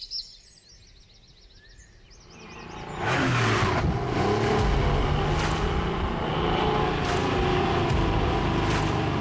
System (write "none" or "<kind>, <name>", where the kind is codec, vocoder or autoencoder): none